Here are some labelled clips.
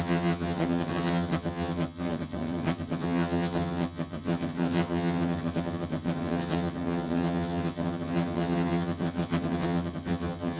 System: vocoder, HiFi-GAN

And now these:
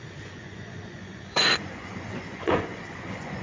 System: vocoder, Vocos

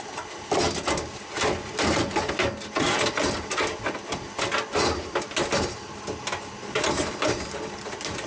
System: none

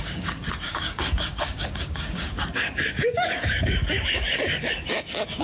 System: codec, DAC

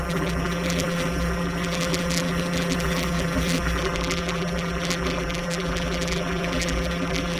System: vocoder, BigVGAN v2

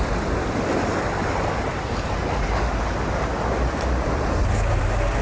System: none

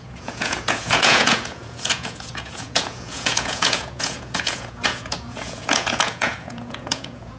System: vocoder, Vocos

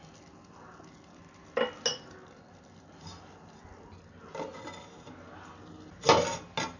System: none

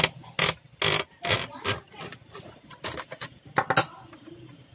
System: none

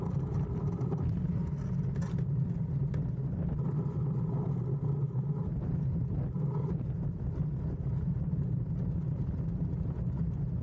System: none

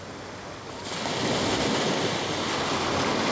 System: none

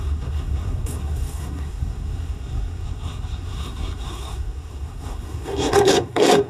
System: codec, SNAC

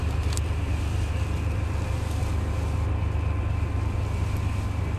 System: none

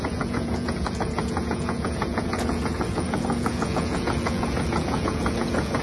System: vocoder, Vocos